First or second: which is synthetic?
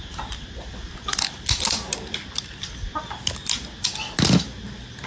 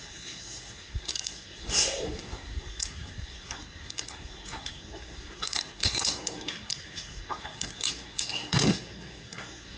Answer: second